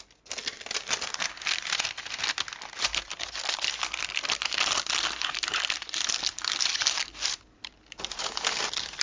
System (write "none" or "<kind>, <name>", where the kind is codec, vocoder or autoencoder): none